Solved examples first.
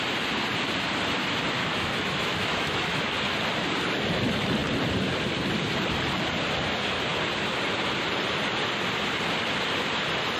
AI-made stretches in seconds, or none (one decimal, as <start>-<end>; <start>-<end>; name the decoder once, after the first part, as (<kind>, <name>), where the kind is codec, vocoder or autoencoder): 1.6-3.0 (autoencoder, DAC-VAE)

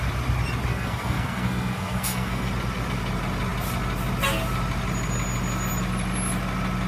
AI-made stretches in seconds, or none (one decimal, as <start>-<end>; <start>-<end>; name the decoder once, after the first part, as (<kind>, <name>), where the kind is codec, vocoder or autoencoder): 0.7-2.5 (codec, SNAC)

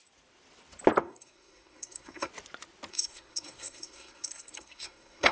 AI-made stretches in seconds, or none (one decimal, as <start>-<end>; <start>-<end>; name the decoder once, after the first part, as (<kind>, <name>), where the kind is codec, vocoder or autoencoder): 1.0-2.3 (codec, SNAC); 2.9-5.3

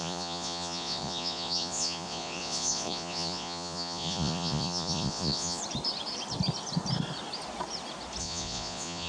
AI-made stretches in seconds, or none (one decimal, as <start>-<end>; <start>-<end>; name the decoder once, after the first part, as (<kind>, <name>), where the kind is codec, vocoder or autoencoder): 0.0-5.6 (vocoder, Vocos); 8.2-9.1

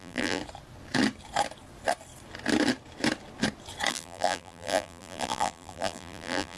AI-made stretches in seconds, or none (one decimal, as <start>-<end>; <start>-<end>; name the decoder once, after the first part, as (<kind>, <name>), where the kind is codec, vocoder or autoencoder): 0.0-0.4 (vocoder, BigVGAN v2); 3.9-6.6

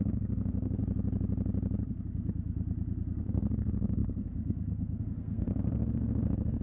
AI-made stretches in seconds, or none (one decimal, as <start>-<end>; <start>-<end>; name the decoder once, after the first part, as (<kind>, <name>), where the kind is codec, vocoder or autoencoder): 0.0-0.8 (codec, SNAC); 3.2-6.6